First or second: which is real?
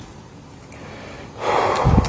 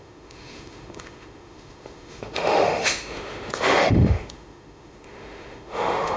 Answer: first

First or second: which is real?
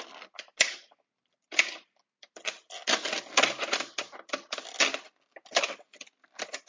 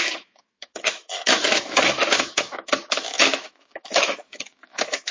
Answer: first